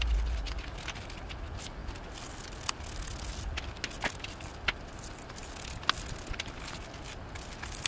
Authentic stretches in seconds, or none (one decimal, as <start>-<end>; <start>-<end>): 0.0-7.9